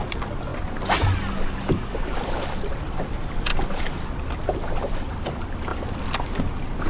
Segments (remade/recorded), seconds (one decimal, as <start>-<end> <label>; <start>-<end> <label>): 0.0-6.9 recorded